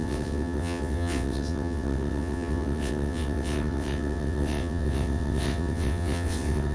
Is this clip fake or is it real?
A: fake